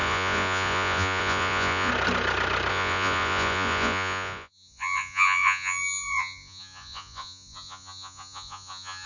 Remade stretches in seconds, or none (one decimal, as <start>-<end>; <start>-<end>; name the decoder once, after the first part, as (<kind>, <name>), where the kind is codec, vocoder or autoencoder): 0.0-1.9 (vocoder, Vocos); 2.7-9.1